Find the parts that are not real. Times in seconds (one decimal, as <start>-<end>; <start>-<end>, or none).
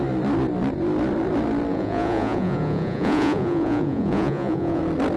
1.7-4.8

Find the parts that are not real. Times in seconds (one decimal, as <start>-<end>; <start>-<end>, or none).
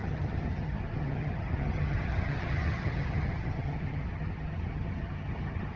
0.0-5.8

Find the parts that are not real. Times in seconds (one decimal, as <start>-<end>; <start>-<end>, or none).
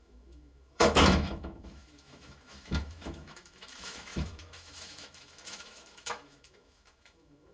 0.0-7.5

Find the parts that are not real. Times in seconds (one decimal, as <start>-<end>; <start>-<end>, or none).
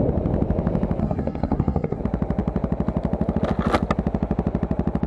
1.0-2.0